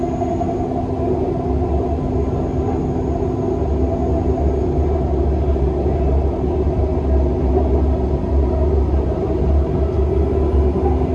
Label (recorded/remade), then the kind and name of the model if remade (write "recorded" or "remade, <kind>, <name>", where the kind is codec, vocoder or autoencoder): recorded